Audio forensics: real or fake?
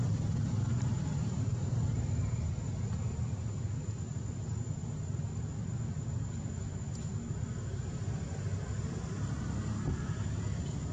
real